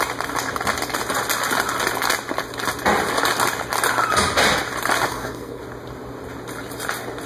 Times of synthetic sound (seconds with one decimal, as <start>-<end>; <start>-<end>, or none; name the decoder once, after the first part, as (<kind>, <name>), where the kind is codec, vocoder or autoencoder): 5.1-5.6 (codec, SNAC)